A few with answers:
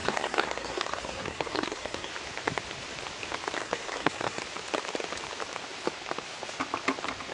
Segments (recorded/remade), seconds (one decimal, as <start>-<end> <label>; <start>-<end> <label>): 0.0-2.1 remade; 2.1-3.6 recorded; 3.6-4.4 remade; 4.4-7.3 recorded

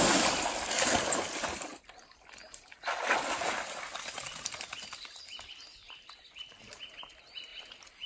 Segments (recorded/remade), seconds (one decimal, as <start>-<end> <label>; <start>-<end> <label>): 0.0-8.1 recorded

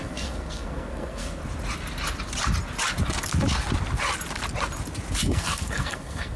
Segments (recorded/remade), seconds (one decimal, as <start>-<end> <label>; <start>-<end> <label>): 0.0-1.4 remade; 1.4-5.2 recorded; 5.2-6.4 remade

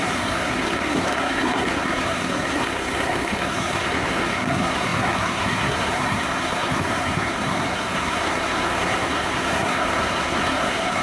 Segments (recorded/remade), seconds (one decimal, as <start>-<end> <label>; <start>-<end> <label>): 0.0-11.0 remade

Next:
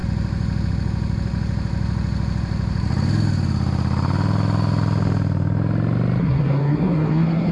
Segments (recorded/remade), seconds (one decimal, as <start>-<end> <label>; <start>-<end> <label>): 0.0-6.2 recorded; 6.2-7.5 remade

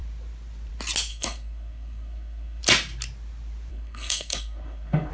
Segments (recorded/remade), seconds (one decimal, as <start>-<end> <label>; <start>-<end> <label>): 0.0-1.1 recorded; 1.1-2.6 remade; 2.6-3.7 recorded; 3.7-5.1 remade

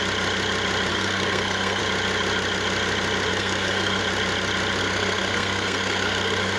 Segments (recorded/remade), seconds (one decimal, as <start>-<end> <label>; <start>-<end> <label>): 0.0-0.9 recorded; 0.9-1.8 remade; 1.8-3.3 recorded; 3.3-4.0 remade; 4.0-4.8 recorded; 4.8-6.6 remade

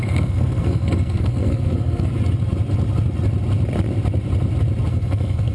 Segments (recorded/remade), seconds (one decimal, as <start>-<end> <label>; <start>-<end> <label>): 0.0-2.1 remade; 2.1-4.9 recorded; 4.9-5.5 remade